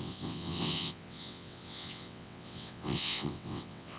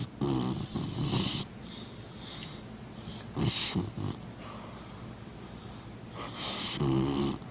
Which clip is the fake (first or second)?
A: first